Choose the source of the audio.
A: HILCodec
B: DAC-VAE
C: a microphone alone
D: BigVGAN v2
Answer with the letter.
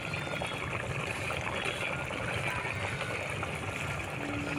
C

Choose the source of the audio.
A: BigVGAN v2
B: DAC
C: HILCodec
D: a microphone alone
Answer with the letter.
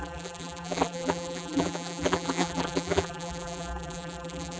A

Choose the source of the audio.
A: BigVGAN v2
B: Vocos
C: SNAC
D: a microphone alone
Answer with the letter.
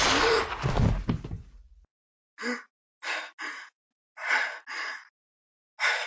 D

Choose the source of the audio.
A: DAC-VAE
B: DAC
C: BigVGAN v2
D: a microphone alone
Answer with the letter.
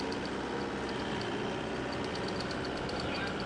D